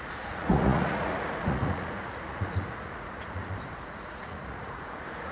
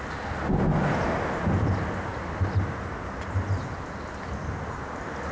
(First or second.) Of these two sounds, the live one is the second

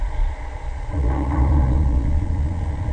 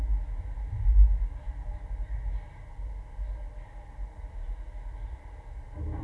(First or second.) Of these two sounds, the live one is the second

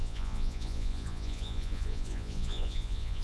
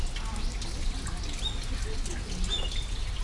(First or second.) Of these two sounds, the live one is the second